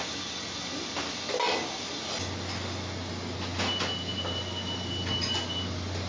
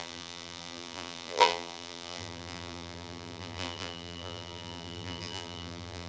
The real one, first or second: first